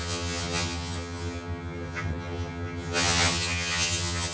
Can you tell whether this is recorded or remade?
remade